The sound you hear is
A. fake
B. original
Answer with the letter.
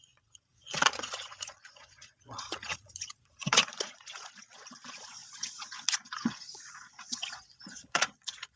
A